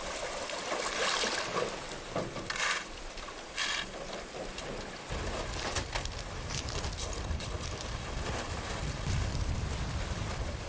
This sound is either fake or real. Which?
fake